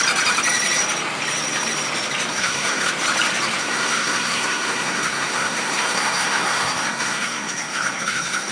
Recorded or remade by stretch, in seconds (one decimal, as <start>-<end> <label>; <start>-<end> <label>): 0.0-2.3 recorded; 2.3-2.9 remade; 2.9-3.6 recorded; 3.6-8.5 remade